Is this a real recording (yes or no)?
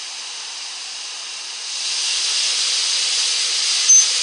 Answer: yes